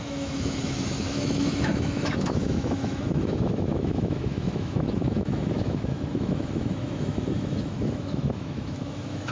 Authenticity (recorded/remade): remade